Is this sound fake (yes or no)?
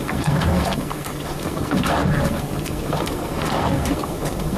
yes